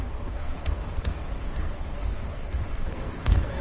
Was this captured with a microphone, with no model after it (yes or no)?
no